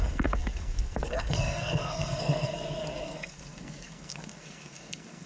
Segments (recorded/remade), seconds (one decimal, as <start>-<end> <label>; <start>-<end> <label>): 0.0-5.3 remade